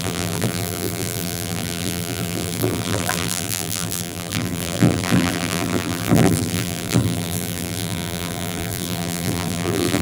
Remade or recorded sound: remade